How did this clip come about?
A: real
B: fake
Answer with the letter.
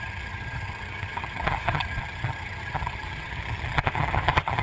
B